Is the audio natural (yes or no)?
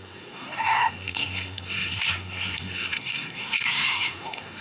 no